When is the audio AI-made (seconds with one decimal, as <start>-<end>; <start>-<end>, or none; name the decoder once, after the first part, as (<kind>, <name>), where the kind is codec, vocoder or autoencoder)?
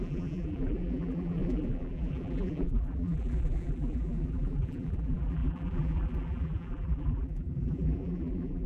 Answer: 0.0-8.7 (vocoder, BigVGAN v2)